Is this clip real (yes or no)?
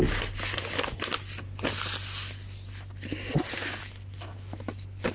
yes